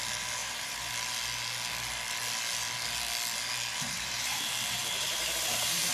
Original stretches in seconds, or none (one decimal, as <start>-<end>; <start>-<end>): 0.0-0.4; 0.9-3.7